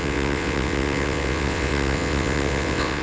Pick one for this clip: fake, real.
fake